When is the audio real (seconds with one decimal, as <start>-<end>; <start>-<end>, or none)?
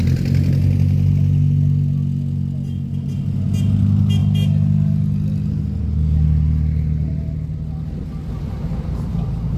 0.0-9.6